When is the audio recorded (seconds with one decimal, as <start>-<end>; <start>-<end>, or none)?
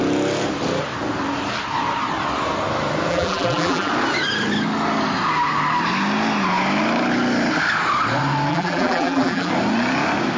0.0-3.1; 3.9-8.5; 9.5-10.4